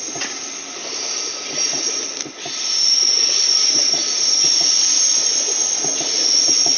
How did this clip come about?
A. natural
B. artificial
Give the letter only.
A